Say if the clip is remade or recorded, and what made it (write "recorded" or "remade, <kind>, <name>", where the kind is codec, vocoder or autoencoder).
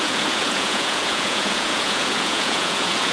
remade, vocoder, Vocos